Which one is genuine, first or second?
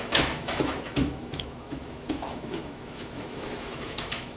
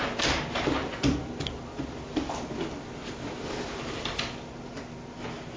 second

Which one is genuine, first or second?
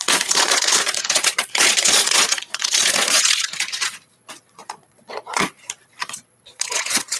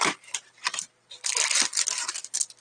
second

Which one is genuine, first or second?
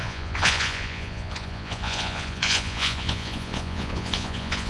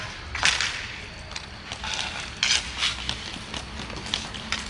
second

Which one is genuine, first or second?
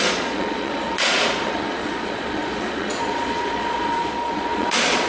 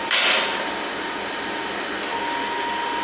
second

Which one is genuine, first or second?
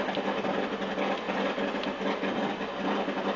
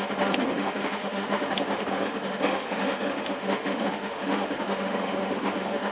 first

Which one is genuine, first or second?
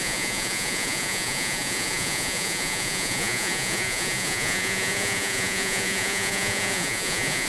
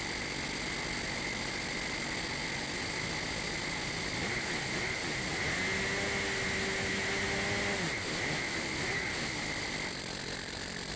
second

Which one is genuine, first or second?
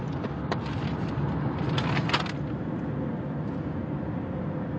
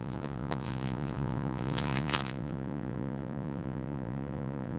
first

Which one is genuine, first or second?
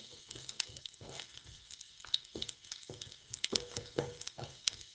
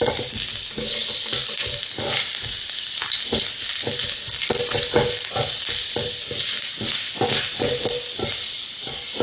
second